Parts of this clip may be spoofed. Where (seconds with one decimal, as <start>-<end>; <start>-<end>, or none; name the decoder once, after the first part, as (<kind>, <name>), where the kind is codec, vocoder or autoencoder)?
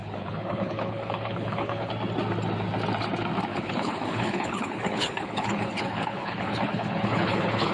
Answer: 0.0-1.9 (codec, HILCodec); 3.5-7.7